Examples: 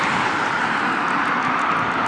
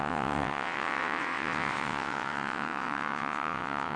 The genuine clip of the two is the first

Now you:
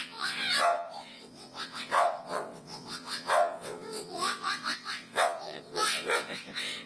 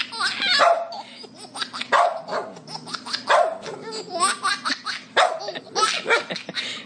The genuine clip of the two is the second